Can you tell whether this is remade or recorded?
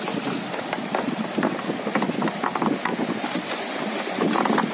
recorded